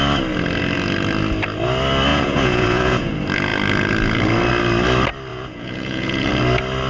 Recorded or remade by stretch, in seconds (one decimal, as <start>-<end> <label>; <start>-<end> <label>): 0.0-2.1 recorded; 2.1-3.1 remade; 3.1-5.3 recorded; 5.3-6.3 remade; 6.3-6.9 recorded